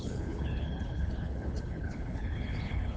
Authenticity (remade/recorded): remade